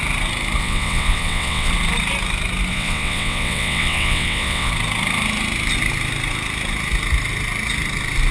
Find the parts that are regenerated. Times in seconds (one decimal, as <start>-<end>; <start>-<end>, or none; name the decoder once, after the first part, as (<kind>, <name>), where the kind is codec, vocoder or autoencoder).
0.6-1.7 (vocoder, WaveNeXt); 2.7-4.7